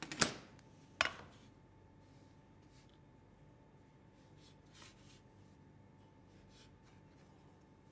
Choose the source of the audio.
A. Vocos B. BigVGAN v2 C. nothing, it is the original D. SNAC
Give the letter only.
C